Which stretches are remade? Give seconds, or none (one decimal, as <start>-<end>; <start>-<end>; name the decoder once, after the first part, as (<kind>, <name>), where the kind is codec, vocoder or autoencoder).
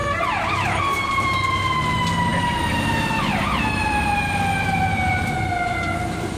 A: none